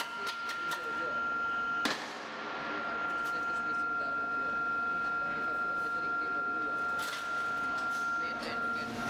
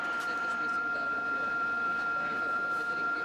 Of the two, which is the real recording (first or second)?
first